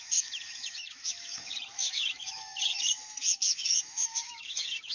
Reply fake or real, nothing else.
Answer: fake